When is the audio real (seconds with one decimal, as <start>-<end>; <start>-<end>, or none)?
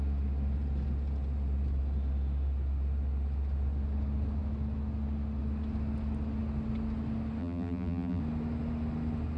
0.0-7.4; 8.2-9.4